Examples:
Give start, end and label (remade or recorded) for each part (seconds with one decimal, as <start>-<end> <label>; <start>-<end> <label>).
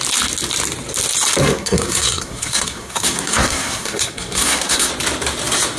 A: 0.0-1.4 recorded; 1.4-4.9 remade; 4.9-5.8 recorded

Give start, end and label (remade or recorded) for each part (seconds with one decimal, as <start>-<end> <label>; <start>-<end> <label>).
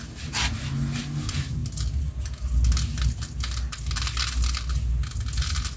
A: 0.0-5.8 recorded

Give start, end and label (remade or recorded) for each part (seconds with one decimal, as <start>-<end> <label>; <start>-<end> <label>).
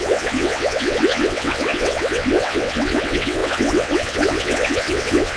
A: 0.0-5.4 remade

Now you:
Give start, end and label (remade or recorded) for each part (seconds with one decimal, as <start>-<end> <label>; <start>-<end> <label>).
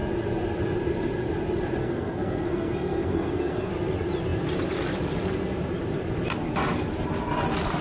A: 0.0-1.8 recorded; 1.8-3.7 remade; 3.7-7.8 recorded